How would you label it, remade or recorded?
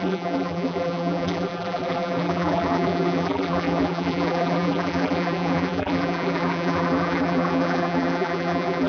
remade